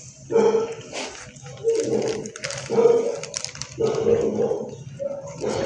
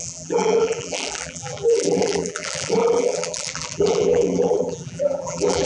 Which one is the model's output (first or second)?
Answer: second